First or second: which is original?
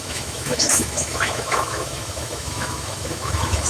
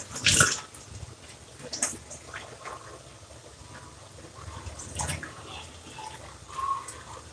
second